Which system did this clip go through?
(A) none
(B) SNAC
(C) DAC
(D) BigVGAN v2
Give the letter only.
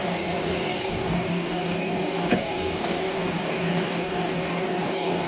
C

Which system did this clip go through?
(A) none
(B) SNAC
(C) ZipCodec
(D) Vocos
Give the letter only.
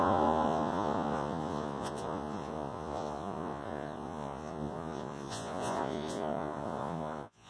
D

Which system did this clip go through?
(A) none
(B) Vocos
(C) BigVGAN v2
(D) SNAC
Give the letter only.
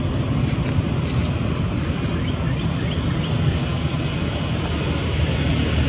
A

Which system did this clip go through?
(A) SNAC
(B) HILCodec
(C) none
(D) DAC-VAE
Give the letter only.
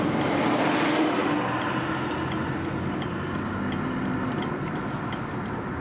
C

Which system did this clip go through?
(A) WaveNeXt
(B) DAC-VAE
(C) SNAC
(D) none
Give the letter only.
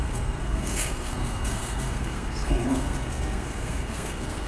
C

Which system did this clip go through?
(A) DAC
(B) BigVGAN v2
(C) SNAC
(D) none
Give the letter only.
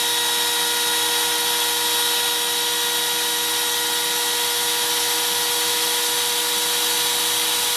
D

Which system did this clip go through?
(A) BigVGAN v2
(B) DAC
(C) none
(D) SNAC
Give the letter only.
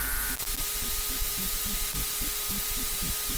A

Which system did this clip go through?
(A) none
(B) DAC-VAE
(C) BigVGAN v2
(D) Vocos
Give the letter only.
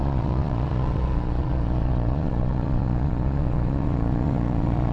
D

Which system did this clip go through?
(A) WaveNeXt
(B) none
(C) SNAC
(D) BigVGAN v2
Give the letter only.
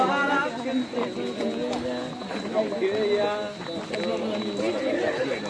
B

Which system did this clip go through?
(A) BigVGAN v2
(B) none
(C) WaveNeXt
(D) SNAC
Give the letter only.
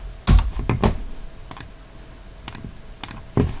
B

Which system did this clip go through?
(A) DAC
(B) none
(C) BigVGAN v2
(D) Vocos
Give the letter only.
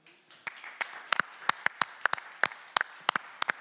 B